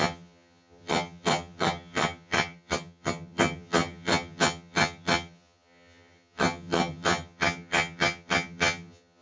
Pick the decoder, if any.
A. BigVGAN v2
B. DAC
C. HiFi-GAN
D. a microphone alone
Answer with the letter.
C